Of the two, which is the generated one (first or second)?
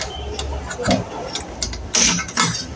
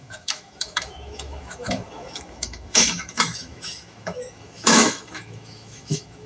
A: second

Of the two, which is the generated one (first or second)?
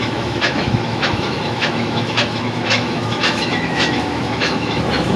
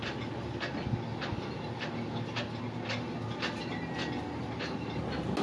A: first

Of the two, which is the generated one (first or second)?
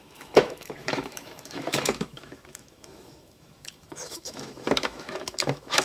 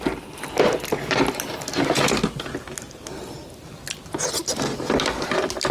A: first